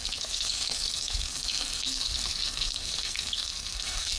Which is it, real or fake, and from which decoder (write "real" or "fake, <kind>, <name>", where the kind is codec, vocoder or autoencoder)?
fake, codec, SNAC